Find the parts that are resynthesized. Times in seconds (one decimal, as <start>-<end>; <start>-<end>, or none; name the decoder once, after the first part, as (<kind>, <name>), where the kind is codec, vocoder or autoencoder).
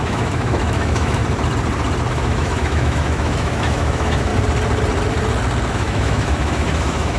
0.0-1.2 (autoencoder, DAC-VAE); 2.1-4.3; 5.7-7.2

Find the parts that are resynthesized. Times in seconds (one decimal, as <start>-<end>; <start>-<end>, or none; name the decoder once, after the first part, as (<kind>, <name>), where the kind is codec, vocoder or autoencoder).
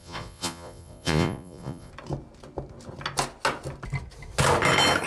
0.0-1.9 (vocoder, Vocos)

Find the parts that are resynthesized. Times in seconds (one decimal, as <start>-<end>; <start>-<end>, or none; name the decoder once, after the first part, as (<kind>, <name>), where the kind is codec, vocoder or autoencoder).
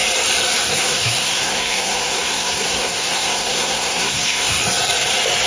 0.7-4.6 (codec, SNAC)